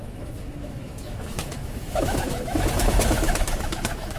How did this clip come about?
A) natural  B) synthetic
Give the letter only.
B